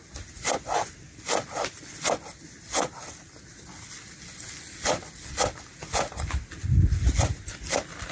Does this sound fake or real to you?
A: real